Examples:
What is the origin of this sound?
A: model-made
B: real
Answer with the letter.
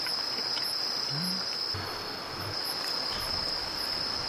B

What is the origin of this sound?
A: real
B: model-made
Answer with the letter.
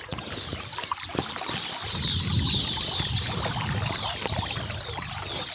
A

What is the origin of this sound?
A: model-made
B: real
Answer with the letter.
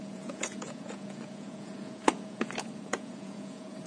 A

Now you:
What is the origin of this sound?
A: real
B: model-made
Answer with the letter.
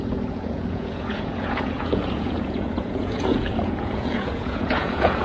B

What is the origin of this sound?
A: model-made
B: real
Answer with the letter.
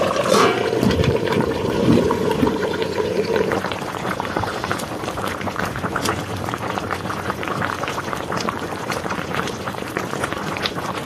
A